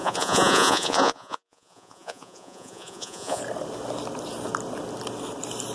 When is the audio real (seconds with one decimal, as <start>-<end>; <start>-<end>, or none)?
3.4-5.7